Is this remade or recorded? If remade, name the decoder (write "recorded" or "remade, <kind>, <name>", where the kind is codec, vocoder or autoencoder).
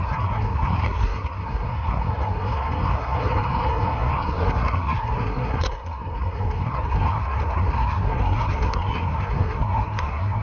remade, codec, SNAC